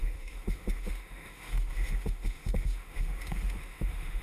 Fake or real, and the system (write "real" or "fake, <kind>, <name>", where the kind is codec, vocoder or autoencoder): fake, autoencoder, DAC-VAE